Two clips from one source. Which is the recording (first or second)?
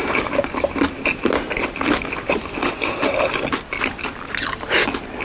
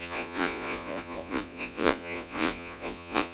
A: first